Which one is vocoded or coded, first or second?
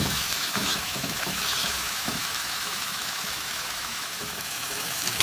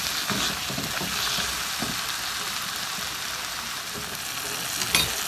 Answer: first